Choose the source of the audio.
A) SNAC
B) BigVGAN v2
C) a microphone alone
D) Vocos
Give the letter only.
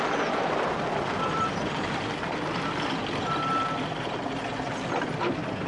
C